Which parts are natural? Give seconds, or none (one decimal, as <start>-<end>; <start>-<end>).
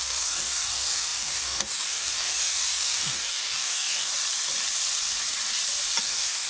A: 4.1-6.0